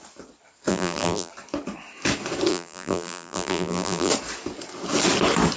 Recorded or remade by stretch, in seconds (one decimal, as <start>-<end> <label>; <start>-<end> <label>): 0.0-0.7 recorded; 0.7-1.3 remade; 1.3-2.5 recorded; 2.5-4.1 remade; 4.1-5.6 recorded